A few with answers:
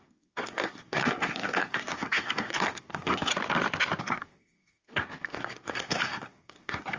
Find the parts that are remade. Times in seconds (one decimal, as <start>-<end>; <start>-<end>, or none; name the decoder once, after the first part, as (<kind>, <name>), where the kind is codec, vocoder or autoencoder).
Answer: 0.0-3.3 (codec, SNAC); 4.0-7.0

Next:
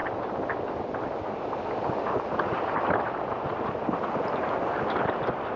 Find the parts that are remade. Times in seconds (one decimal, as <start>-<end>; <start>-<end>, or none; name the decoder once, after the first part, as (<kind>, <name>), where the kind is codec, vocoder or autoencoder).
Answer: none

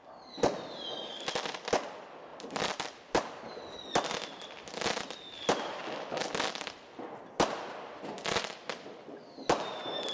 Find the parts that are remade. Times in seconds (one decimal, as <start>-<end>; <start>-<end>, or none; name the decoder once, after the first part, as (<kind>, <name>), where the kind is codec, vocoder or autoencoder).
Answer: none

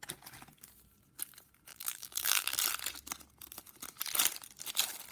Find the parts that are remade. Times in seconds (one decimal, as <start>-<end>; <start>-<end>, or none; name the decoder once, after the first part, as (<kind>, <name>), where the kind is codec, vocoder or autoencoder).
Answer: 1.7-2.6 (vocoder, BigVGAN v2)

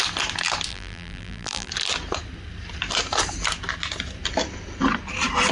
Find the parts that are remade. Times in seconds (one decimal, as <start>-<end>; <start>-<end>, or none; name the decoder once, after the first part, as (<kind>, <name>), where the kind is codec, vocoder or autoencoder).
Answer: 0.7-1.7 (vocoder, BigVGAN v2)

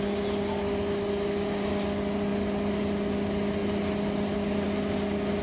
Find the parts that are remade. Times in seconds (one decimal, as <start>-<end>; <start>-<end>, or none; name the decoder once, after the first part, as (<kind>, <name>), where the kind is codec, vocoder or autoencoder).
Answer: none

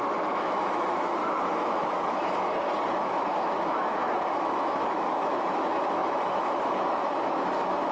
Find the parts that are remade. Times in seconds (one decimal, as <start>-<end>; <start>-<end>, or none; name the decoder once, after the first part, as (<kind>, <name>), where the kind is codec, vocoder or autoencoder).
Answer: 0.0-2.5 (autoencoder, DAC-VAE); 3.1-7.9